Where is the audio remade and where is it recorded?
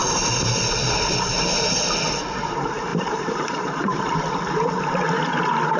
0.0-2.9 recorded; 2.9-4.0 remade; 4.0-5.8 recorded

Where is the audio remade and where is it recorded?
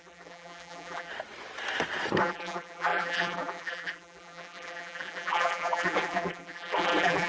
0.0-1.1 remade; 1.1-2.2 recorded; 2.2-7.3 remade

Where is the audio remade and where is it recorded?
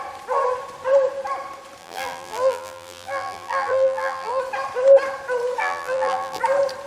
0.0-1.8 recorded; 1.8-4.4 remade; 4.4-5.6 recorded; 5.6-6.4 remade; 6.4-6.9 recorded